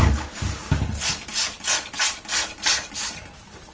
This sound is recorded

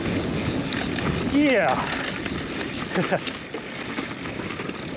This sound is recorded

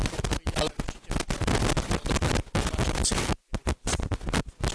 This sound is recorded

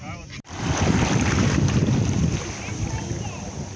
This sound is recorded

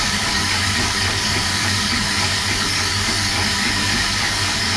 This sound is remade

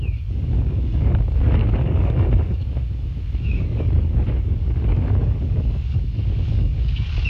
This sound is remade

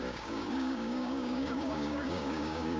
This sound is remade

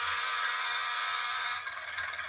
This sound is remade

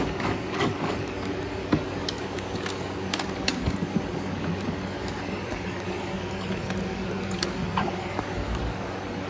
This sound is remade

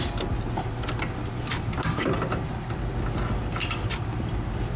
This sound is recorded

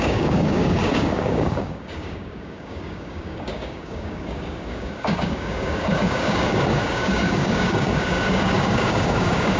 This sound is remade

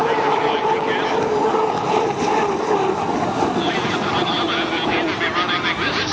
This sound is recorded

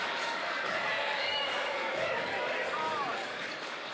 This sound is remade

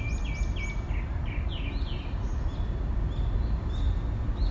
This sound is recorded